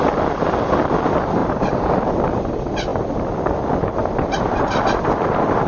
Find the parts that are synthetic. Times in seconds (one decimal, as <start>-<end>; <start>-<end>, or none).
1.4-2.0; 4.0-4.8